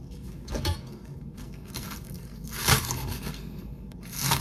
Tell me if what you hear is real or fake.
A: fake